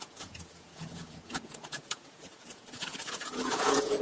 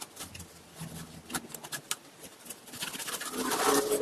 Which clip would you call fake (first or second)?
first